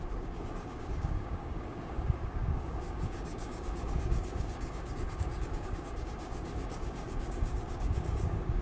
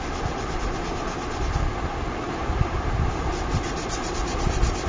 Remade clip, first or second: first